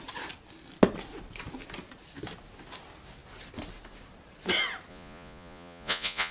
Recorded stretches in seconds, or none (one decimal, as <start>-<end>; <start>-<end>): 0.0-4.9